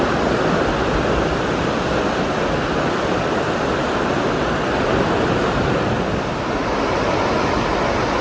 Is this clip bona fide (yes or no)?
yes